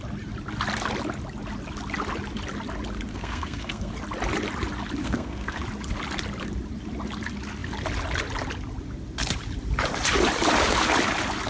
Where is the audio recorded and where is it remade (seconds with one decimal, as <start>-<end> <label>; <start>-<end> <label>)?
0.0-3.1 recorded; 3.1-3.9 remade; 3.9-5.0 recorded; 5.0-5.6 remade; 5.6-11.5 recorded